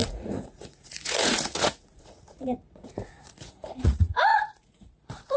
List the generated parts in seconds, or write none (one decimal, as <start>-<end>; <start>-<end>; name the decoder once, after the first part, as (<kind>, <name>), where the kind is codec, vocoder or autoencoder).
0.0-5.4 (vocoder, Vocos)